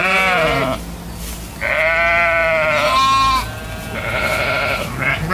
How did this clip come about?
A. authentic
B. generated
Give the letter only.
A